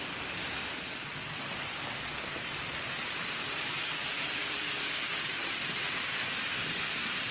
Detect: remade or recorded recorded